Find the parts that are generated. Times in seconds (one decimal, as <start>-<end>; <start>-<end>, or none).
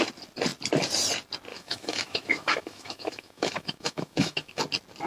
1.5-4.6